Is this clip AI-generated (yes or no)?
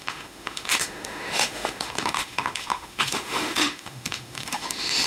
yes